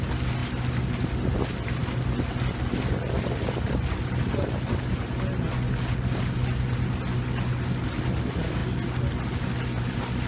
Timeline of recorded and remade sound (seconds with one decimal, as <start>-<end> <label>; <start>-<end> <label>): 0.0-10.3 recorded